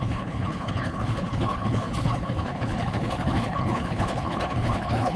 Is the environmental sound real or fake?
fake